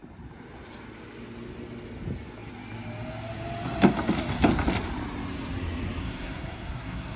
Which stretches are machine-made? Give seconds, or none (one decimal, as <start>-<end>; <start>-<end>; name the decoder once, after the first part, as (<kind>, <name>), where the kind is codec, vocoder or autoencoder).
6.0-7.2 (codec, SNAC)